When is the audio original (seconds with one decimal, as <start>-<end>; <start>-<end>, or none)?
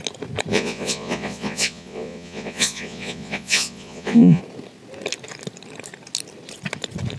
0.0-0.5; 4.4-7.2